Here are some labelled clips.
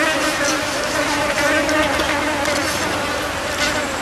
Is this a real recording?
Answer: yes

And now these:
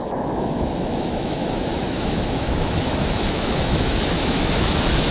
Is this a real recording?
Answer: no